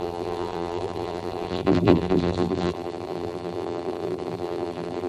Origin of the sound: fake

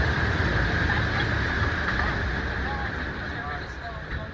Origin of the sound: real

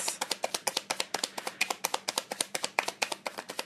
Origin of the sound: fake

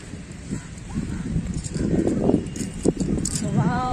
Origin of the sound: fake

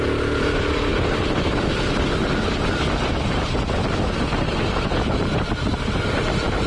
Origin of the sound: real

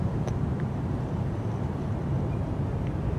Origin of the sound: fake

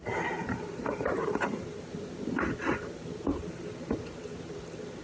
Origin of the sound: fake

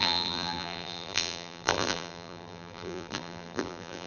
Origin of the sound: fake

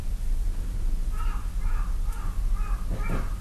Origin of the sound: real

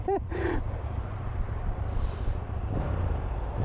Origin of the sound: fake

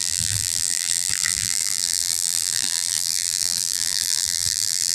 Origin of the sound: fake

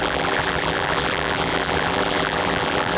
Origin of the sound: fake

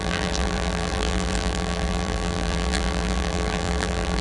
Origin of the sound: fake